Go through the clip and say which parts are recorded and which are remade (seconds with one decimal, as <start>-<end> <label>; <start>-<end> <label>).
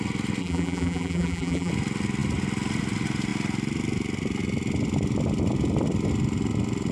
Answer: 0.0-0.4 recorded; 0.4-1.7 remade; 1.7-6.9 recorded